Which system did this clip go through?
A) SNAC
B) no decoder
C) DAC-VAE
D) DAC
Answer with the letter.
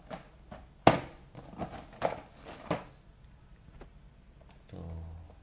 B